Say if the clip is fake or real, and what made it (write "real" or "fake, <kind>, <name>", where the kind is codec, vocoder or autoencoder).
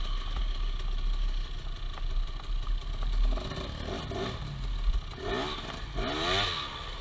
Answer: real